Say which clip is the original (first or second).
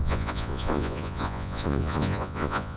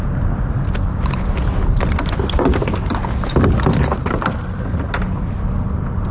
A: second